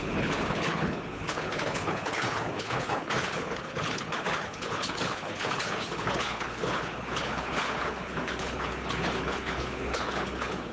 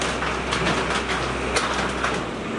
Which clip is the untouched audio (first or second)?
second